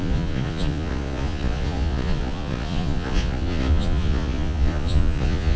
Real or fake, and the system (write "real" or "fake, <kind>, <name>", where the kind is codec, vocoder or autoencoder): fake, vocoder, Vocos